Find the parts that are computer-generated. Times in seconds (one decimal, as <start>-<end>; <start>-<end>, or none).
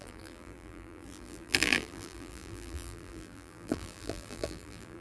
0.0-5.0